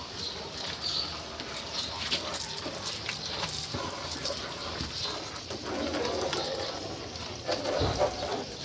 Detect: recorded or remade recorded